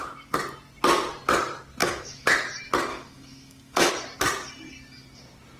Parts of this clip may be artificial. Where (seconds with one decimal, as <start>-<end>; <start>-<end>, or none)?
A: 1.8-2.3; 2.9-3.9